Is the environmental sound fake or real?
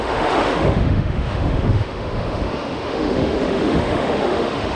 fake